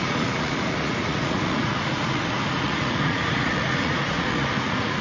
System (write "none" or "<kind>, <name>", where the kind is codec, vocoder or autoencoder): vocoder, Vocos